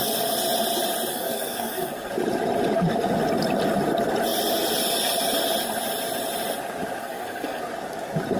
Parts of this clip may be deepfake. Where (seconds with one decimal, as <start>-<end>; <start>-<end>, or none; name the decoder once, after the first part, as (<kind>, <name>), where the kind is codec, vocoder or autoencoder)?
1.1-2.1 (codec, SNAC); 7.0-7.6